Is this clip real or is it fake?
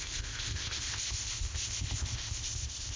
fake